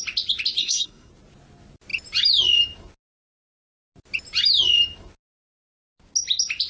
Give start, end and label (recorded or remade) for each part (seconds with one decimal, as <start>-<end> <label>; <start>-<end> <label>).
0.0-0.6 recorded; 0.6-1.1 remade; 1.1-6.7 recorded